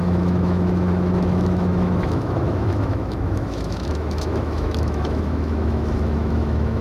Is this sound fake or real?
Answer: fake